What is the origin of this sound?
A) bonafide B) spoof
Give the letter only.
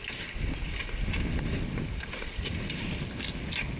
A